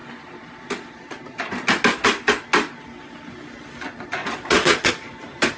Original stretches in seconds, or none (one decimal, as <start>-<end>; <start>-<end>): 0.0-4.2; 4.9-5.6